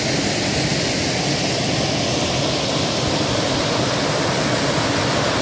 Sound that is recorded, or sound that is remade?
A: recorded